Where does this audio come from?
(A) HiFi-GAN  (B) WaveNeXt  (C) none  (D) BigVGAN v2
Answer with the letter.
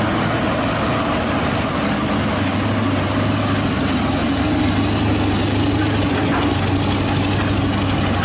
C